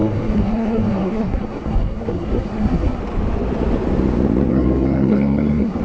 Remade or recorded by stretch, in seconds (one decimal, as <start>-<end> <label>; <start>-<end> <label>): 0.0-3.0 remade; 3.0-4.5 recorded; 4.5-5.8 remade